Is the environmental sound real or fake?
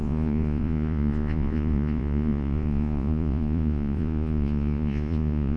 fake